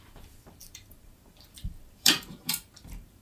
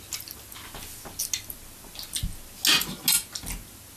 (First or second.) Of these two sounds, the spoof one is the first